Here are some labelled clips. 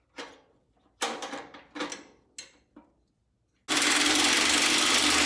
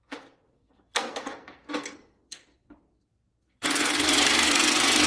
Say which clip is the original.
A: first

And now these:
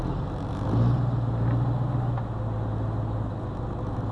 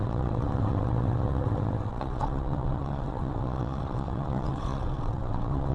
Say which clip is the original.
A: first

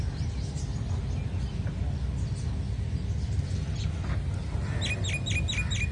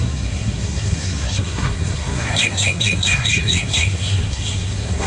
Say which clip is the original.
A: first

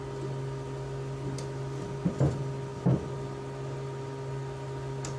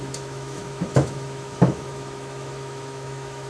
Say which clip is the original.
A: first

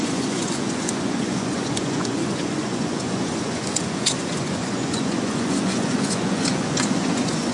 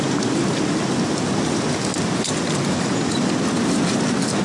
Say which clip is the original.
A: second